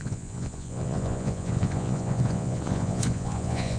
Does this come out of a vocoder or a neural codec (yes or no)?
yes